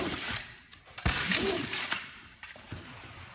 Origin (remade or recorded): remade